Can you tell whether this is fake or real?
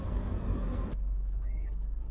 fake